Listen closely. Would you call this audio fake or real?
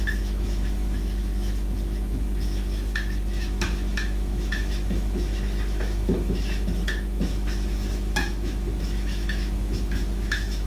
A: fake